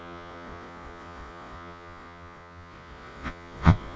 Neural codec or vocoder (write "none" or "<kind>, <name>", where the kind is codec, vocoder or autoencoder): vocoder, Vocos